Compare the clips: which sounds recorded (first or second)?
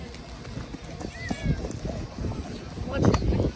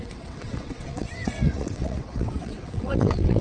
first